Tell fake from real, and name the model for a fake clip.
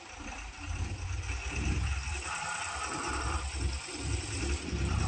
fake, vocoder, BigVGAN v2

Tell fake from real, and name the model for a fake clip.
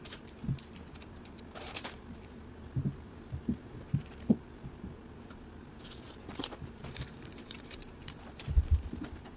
fake, vocoder, BigVGAN v2